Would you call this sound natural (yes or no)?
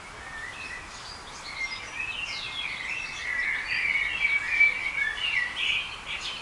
yes